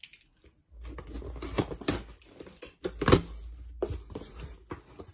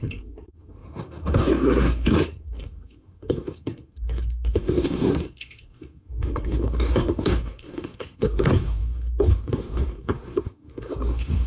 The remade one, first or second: second